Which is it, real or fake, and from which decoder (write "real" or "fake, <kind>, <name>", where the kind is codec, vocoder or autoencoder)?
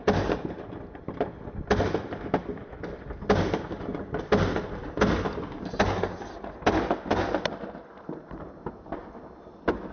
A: real